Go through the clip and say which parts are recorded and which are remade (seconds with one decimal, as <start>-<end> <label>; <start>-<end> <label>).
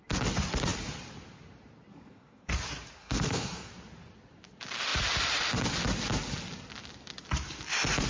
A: 0.0-1.9 recorded; 1.9-2.5 remade; 2.5-3.0 recorded; 3.0-3.7 remade; 3.7-8.1 recorded